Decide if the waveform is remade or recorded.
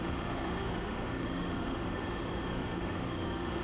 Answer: remade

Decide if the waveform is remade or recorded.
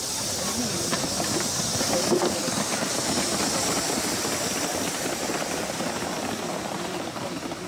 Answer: recorded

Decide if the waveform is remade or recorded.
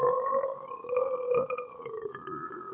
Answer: recorded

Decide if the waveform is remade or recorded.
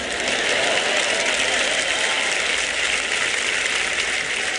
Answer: recorded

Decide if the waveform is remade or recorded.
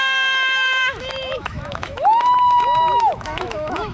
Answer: remade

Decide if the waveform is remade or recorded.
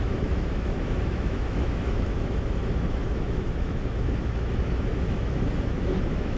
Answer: remade